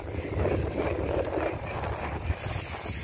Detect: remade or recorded remade